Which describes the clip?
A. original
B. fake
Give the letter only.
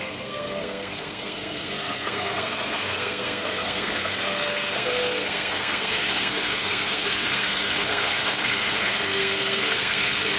B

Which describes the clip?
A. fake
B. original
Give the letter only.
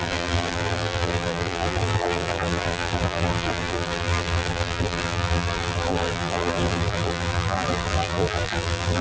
A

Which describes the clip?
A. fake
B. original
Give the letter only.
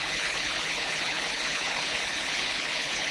A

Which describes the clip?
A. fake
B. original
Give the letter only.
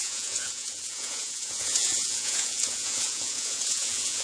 A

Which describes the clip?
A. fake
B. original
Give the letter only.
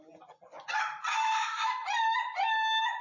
B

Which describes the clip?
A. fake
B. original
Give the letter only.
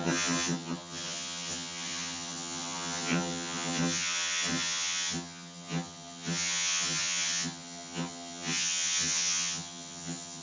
A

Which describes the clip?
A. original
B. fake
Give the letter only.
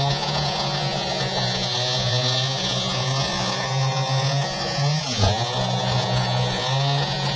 B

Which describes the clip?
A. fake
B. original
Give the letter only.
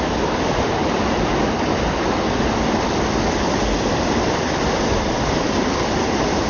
B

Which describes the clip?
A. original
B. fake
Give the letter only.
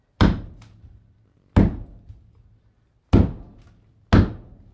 A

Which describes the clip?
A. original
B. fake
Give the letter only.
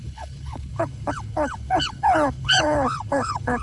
B